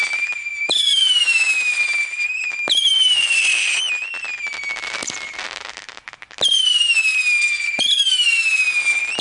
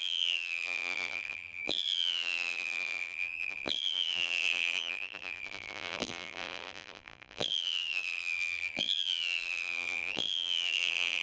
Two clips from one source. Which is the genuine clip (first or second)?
first